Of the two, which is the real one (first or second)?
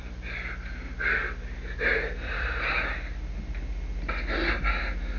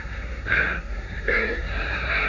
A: first